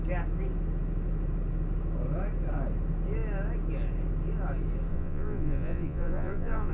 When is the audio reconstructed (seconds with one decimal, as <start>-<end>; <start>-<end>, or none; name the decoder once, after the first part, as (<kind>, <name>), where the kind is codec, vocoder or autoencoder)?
4.9-6.7 (vocoder, Vocos)